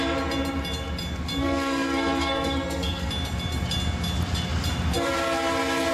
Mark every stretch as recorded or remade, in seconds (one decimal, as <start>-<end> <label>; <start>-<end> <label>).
0.0-1.4 recorded; 1.4-3.1 remade; 3.1-5.9 recorded